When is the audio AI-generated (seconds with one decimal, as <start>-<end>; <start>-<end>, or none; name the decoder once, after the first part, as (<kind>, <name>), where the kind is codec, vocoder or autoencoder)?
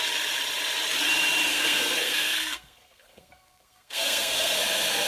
1.5-4.6 (codec, SNAC)